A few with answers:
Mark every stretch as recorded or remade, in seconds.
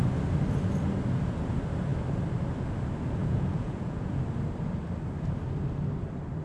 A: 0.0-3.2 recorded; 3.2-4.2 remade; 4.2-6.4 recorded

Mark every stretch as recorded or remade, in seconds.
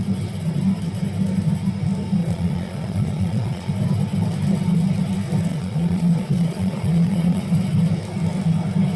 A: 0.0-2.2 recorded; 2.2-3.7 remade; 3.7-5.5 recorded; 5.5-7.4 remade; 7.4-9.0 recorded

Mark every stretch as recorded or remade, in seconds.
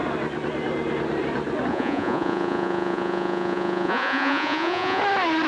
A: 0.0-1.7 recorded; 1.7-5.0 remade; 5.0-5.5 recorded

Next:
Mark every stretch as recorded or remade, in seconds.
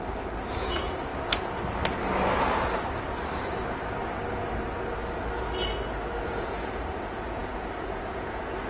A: 0.0-0.5 recorded; 0.5-1.1 remade; 1.1-6.2 recorded; 6.2-8.7 remade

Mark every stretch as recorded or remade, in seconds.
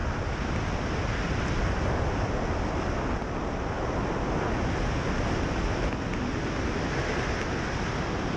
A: 0.0-8.4 recorded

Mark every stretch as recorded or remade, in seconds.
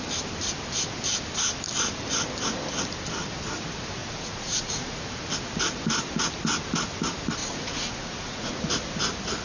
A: 0.0-4.0 recorded; 4.0-5.0 remade; 5.0-7.4 recorded; 7.4-8.6 remade; 8.6-9.4 recorded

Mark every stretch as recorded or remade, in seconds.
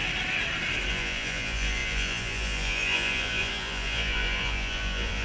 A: 0.0-0.9 recorded; 0.9-5.2 remade